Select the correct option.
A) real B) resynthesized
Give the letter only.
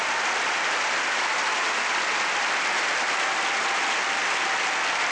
A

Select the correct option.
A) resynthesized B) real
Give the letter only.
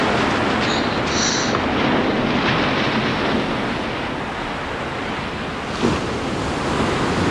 B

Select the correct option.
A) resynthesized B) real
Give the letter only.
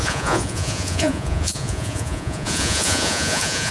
A